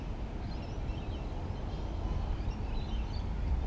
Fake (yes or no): no